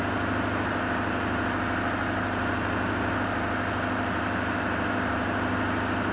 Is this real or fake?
real